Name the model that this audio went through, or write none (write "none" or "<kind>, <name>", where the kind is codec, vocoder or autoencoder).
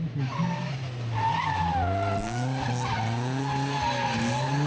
none